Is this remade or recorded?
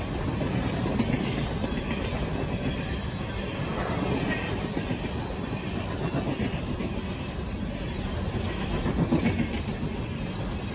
recorded